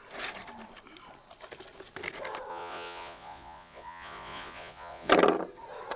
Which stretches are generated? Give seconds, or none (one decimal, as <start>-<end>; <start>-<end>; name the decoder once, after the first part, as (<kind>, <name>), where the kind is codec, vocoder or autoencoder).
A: 2.5-5.1 (vocoder, Vocos)